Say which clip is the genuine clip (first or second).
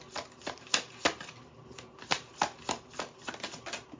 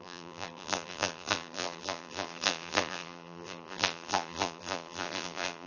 first